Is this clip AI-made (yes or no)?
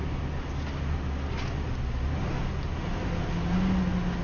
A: no